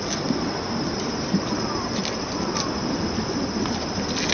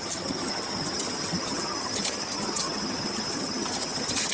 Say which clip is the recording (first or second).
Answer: first